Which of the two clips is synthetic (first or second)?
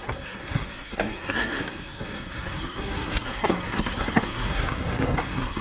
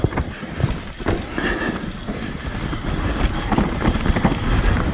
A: first